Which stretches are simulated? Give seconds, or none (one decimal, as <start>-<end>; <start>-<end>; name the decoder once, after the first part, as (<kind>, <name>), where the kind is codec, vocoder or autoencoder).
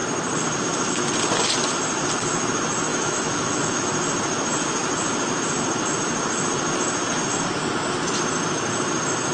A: 2.9-3.8 (autoencoder, DAC-VAE)